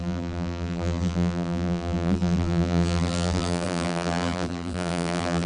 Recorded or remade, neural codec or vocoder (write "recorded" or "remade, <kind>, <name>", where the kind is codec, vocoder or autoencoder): remade, vocoder, BigVGAN v2